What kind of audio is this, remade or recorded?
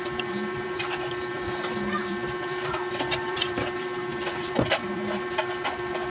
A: remade